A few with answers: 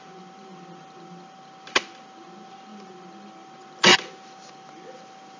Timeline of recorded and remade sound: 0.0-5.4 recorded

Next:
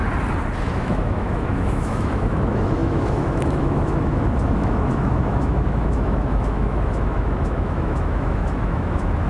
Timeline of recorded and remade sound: 0.0-0.6 recorded; 0.6-9.3 remade

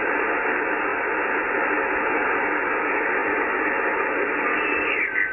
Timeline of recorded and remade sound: 0.0-5.3 recorded